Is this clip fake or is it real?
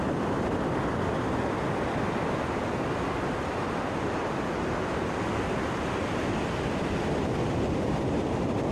fake